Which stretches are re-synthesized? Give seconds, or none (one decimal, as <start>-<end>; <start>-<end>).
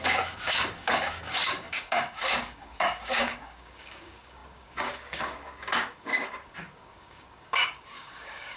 0.0-8.6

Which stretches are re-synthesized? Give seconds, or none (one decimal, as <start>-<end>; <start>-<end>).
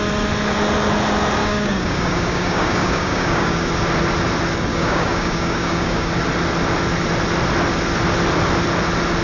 1.4-3.7; 4.7-6.1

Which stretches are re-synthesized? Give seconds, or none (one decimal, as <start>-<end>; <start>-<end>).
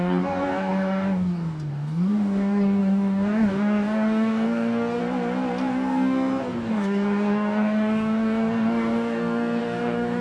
0.0-5.0; 5.7-10.2